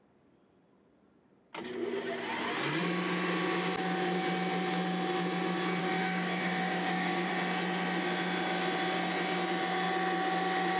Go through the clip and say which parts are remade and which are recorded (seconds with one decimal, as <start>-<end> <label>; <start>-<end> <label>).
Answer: 0.0-5.8 recorded; 5.8-7.3 remade; 7.3-10.8 recorded